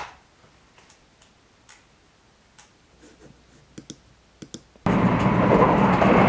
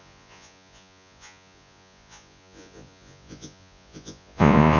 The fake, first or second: second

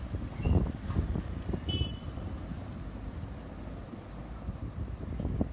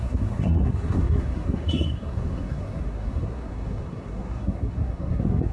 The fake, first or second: second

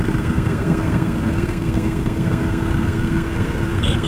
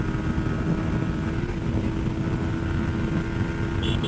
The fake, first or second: first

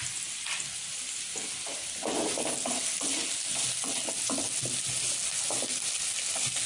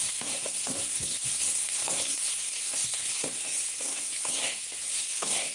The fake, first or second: second